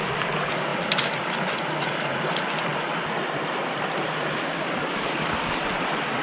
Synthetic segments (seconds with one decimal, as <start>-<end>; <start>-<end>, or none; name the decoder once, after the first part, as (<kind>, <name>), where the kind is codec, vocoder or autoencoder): none